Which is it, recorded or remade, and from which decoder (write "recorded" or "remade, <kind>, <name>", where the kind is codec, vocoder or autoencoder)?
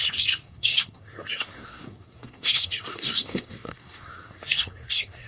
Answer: remade, codec, SNAC